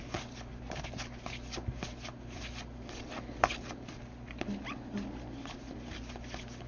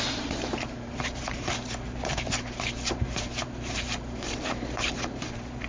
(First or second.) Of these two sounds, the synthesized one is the second